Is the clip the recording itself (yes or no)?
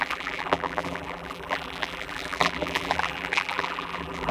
no